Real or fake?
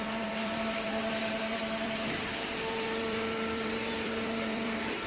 fake